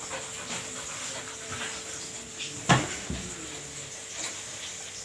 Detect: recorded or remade recorded